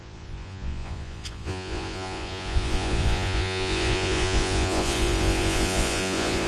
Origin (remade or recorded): remade